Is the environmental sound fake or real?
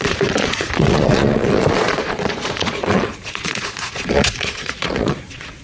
fake